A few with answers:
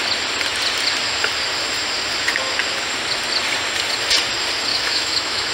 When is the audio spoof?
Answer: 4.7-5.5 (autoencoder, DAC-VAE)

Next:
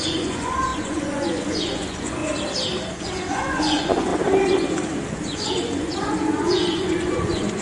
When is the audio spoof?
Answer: 0.0-2.2 (vocoder, Vocos); 2.9-4.1; 5.1-7.6

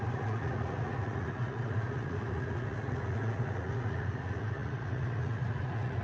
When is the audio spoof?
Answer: 0.0-6.0 (vocoder, Vocos)